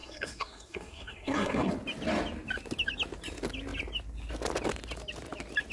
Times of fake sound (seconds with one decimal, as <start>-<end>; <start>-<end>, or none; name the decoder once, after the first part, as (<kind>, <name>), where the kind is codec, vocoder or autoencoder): 0.0-1.7 (codec, SNAC)